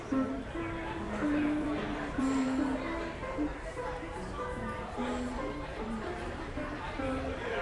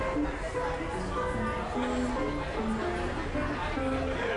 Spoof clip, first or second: first